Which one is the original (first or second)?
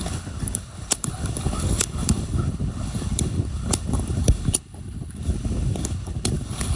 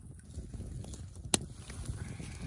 second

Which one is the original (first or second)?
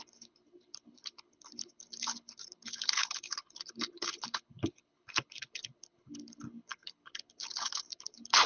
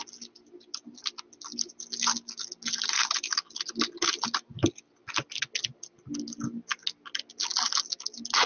second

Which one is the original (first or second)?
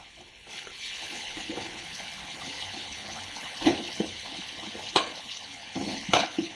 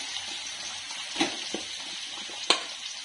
second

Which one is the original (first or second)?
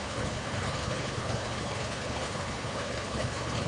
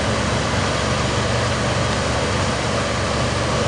second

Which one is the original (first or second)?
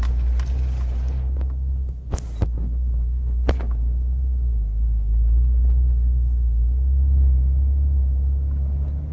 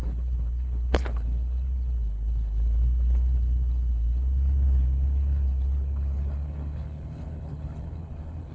first